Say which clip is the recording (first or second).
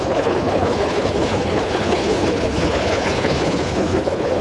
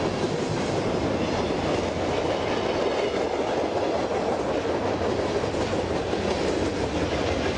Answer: second